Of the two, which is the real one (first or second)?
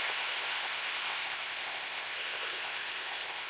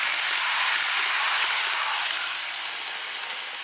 second